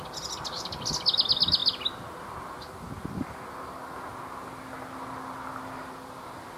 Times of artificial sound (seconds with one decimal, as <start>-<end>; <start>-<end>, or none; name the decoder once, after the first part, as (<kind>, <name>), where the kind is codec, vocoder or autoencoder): none